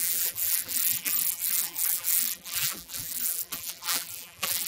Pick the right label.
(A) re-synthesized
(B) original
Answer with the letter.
A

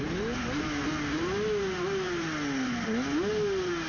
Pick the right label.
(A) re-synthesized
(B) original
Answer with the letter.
B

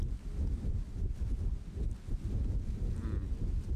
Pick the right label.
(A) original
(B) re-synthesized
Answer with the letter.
A